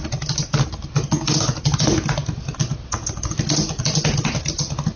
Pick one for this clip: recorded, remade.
recorded